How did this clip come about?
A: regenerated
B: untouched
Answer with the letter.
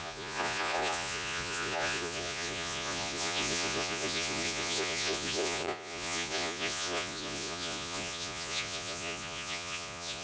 A